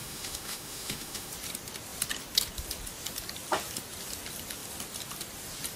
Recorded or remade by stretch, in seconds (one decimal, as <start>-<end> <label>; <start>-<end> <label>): 0.0-1.3 remade; 1.3-5.8 recorded